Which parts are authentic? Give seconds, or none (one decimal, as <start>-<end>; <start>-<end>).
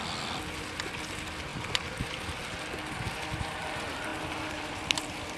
0.0-5.4